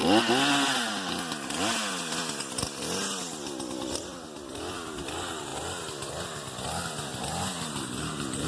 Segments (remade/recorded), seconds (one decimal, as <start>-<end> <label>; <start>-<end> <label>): 0.0-8.5 recorded